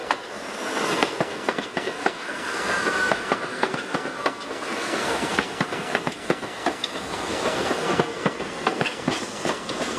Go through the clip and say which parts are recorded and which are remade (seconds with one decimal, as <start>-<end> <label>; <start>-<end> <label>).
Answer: 0.0-10.0 remade